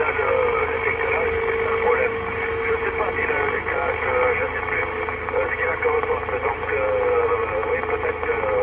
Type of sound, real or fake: real